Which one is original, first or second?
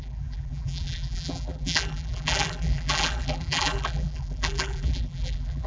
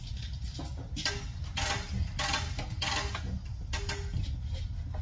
second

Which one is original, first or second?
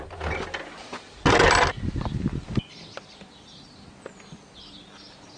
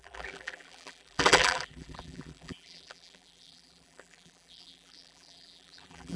first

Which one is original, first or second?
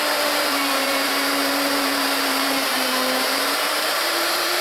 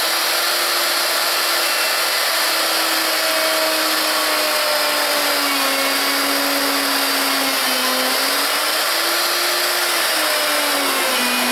second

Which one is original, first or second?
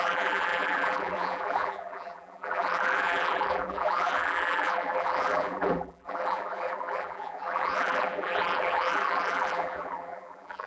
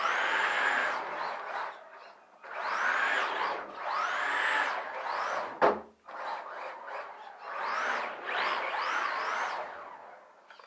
second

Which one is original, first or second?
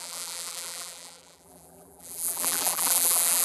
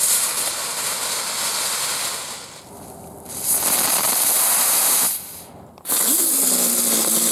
second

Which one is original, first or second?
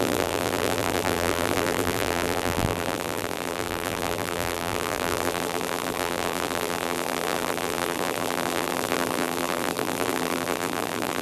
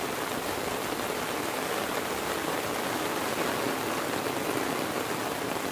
second